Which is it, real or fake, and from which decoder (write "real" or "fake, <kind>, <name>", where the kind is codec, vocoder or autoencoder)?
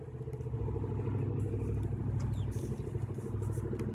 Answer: real